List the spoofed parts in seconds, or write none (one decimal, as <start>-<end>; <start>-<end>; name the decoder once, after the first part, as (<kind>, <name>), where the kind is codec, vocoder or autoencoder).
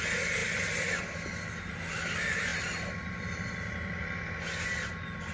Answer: none